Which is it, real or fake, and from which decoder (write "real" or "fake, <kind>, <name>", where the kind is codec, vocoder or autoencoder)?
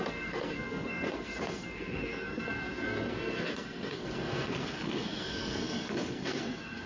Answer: fake, codec, SNAC